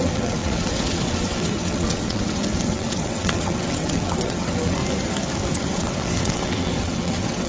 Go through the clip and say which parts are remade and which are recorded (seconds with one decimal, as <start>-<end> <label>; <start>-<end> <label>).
0.0-4.8 remade; 4.8-5.6 recorded; 5.6-7.5 remade